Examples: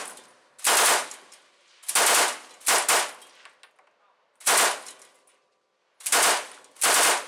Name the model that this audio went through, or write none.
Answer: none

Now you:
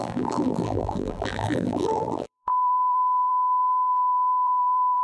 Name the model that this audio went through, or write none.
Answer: vocoder, BigVGAN v2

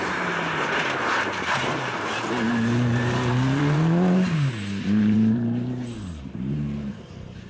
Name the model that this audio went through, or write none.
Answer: vocoder, BigVGAN v2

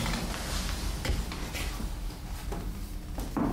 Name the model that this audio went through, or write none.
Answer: none